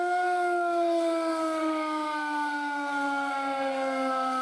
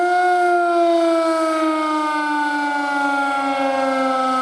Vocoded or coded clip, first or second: first